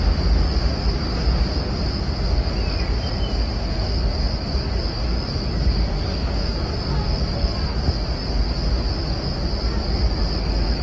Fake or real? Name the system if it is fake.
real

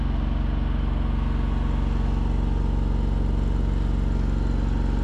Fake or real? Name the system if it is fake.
real